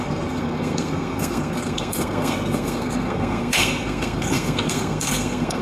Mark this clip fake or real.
fake